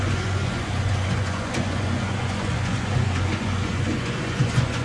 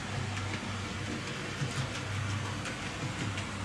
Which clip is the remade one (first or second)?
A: first